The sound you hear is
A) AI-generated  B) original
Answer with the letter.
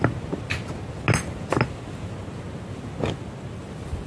B